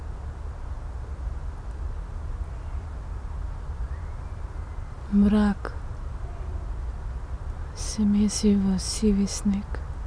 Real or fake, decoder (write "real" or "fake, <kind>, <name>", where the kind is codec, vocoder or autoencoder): real